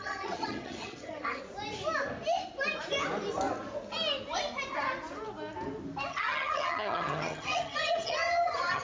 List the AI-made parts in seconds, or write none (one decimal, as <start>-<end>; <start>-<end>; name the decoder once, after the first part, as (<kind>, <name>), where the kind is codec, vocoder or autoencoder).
0.0-1.4 (vocoder, HiFi-GAN); 6.1-8.8

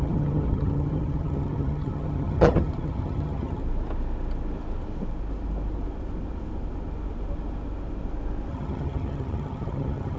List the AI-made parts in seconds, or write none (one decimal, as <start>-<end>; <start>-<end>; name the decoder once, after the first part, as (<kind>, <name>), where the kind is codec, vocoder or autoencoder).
0.0-3.6 (vocoder, HiFi-GAN); 8.5-10.2